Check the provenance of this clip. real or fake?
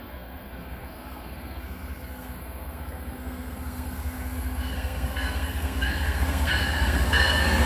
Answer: fake